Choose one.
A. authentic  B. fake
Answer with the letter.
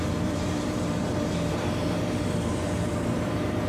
B